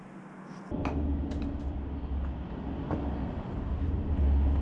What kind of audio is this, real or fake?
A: real